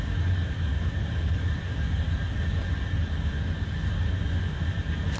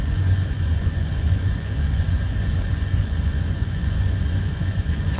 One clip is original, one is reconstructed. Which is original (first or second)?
first